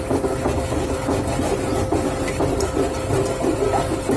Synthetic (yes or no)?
no